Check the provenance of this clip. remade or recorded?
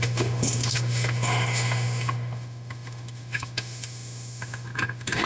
remade